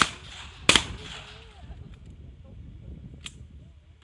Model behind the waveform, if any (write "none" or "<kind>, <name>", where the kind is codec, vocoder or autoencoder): none